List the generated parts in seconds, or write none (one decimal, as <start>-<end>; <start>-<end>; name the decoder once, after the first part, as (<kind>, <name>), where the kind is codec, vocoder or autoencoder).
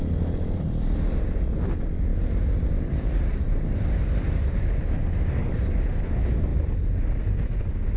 2.1-4.5 (vocoder, BigVGAN v2)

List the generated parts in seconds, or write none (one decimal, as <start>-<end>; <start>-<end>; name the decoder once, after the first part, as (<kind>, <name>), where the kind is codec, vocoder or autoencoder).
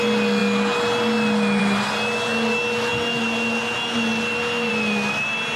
none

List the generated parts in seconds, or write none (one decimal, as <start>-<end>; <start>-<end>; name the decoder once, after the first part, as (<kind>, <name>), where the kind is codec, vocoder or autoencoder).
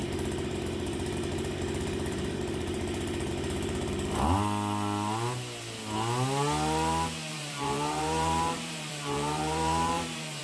0.0-3.9 (vocoder, BigVGAN v2); 7.3-10.4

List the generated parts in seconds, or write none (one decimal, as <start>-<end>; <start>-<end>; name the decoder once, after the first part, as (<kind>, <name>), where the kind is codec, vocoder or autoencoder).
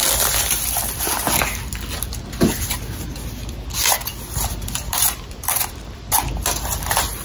0.0-1.1 (vocoder, BigVGAN v2); 4.1-5.7